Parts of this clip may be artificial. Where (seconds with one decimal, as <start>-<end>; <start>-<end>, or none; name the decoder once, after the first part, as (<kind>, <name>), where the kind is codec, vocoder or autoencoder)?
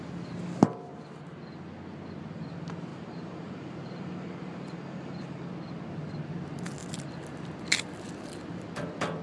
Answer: 2.9-5.5 (vocoder, BigVGAN v2)